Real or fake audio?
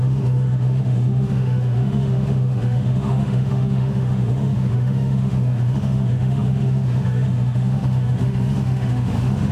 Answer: fake